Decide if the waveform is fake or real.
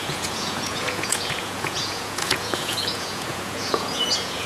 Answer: fake